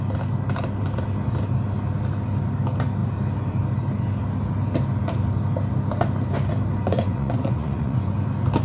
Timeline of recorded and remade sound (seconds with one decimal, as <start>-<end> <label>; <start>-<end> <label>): 0.0-6.8 recorded; 6.8-8.1 remade; 8.1-8.6 recorded